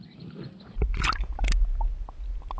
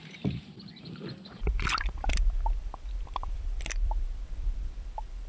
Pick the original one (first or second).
first